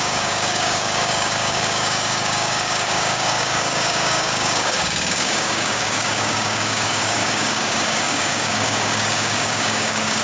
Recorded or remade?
remade